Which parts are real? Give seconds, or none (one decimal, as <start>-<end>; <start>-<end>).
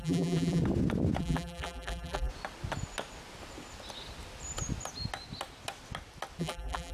0.6-1.2; 2.3-6.4